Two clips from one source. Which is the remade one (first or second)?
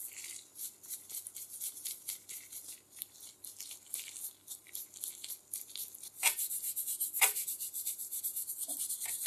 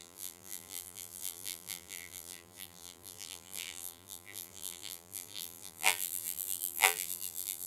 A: second